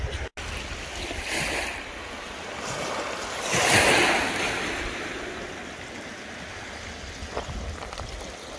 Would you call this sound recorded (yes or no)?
yes